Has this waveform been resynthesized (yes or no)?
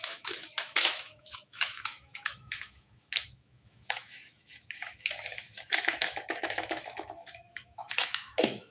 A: yes